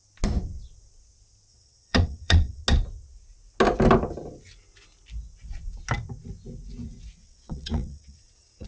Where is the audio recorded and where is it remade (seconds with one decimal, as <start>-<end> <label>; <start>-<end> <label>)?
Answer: 0.0-1.5 recorded; 1.5-2.6 remade; 2.6-7.2 recorded; 7.2-8.7 remade